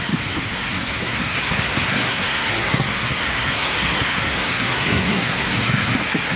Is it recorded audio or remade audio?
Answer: remade